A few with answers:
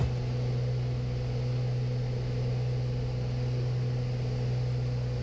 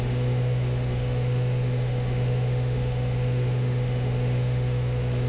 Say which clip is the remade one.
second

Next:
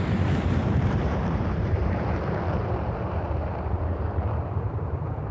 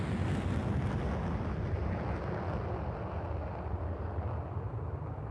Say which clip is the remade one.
first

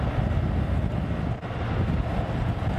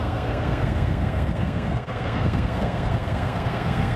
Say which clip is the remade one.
second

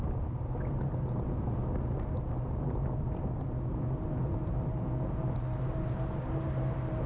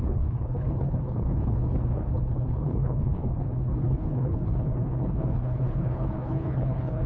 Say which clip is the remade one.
second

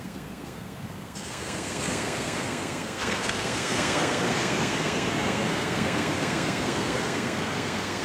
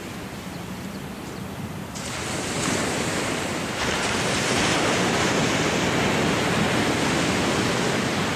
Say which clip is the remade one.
first